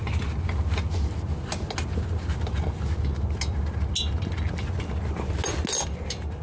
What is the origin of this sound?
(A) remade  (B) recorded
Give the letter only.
B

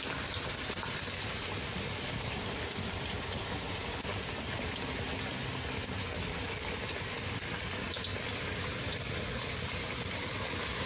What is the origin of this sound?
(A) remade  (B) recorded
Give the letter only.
B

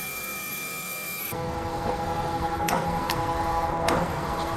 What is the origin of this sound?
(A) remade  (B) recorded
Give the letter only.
A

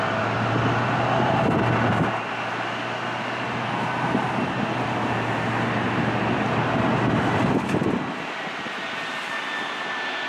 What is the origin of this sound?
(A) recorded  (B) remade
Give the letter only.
A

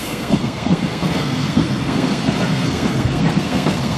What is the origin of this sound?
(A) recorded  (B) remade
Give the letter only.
B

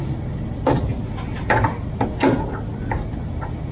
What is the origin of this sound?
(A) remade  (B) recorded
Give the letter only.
B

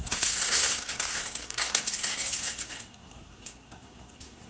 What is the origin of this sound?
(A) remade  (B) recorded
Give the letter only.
A